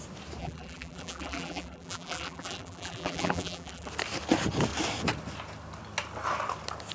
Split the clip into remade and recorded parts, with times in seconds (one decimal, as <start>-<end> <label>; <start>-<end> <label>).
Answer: 0.0-0.4 recorded; 0.4-3.9 remade; 3.9-6.9 recorded